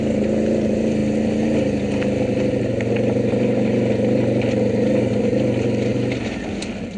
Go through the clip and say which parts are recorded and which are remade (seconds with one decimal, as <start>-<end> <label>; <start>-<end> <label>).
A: 0.0-7.0 recorded